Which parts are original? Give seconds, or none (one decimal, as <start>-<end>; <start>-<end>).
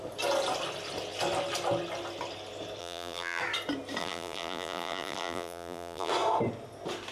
0.0-2.8; 3.4-4.0; 6.1-7.1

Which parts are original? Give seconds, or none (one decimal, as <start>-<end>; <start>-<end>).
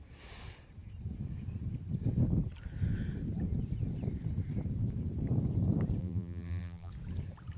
0.0-6.0; 6.9-7.6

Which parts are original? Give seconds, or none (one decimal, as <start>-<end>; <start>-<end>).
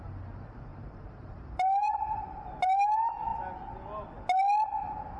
0.0-0.7; 2.5-5.2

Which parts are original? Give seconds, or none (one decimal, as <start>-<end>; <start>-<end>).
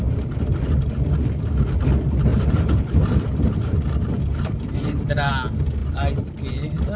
0.0-2.3; 5.3-7.0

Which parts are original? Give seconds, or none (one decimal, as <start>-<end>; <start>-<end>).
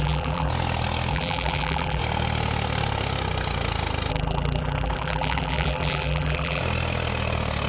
0.5-1.1; 2.0-4.1; 6.6-7.7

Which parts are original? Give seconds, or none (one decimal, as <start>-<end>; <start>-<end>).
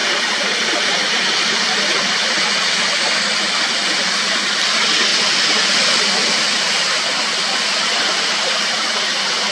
2.3-5.1; 6.0-9.5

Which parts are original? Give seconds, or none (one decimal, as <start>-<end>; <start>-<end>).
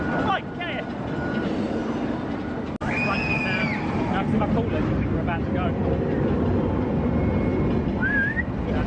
0.0-8.9